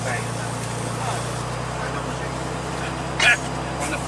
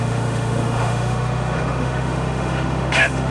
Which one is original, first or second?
first